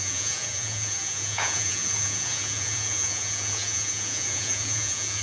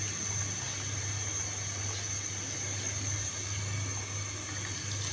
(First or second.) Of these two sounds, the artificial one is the first